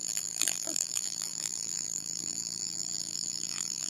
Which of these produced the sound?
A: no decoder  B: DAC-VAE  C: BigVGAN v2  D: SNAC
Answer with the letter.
C